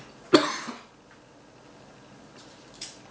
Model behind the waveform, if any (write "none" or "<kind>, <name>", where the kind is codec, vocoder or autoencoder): none